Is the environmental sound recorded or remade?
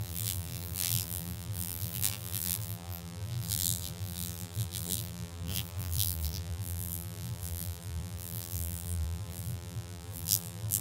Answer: remade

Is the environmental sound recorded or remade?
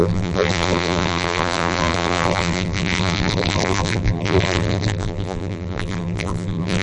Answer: remade